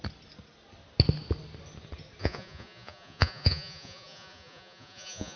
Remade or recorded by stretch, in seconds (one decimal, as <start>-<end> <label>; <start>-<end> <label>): 0.0-2.2 recorded; 2.2-5.4 remade